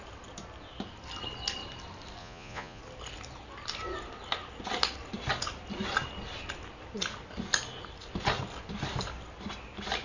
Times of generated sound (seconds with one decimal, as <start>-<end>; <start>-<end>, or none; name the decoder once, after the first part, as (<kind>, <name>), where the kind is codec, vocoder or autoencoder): 2.2-2.8 (vocoder, Vocos)